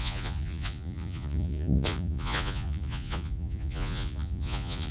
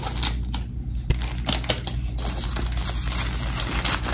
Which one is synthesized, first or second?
first